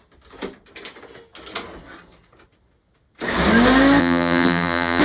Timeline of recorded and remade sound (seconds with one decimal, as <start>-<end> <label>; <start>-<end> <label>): 0.0-4.0 recorded; 4.0-5.0 remade